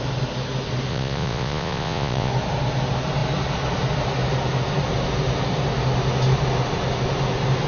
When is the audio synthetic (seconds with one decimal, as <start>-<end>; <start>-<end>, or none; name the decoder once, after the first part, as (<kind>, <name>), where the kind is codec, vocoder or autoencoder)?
0.9-2.3 (vocoder, Vocos)